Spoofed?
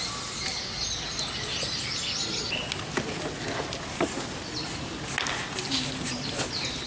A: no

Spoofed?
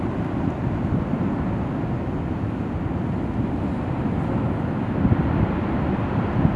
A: no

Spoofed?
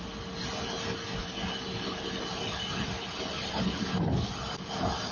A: no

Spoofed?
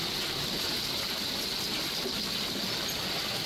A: no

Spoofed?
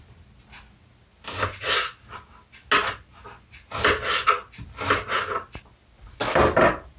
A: no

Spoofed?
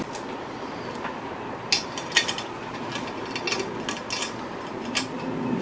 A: no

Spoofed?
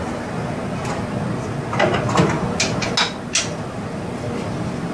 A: no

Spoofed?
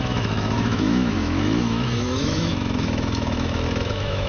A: yes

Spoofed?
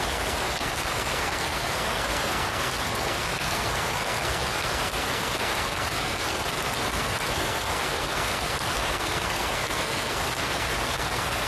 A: yes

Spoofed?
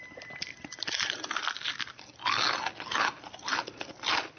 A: no